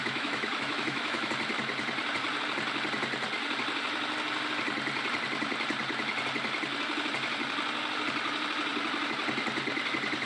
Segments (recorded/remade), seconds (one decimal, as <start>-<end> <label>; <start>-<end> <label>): 0.0-1.3 remade; 1.3-10.3 recorded